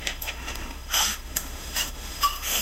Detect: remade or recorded remade